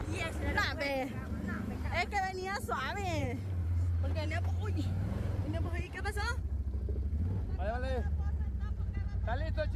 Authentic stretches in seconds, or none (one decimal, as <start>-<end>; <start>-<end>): 0.0-3.2; 6.4-9.8